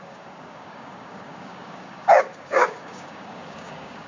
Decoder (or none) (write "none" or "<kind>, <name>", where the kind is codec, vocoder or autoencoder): codec, DAC